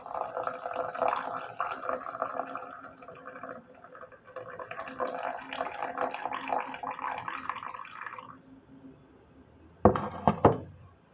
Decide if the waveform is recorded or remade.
recorded